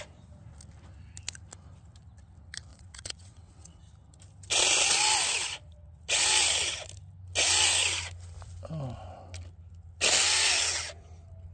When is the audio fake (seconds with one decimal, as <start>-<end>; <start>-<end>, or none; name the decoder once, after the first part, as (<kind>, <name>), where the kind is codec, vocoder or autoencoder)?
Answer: 2.7-3.8 (vocoder, WaveNeXt)